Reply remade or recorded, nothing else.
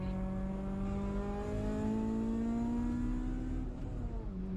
recorded